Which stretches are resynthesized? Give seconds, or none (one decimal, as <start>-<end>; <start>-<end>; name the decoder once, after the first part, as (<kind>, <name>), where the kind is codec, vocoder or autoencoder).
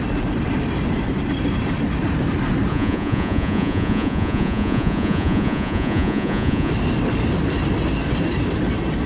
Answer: 2.7-6.7 (vocoder, Vocos)